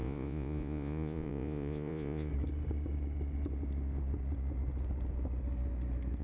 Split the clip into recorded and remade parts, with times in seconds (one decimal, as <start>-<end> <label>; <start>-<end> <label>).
0.0-2.3 remade; 2.3-6.2 recorded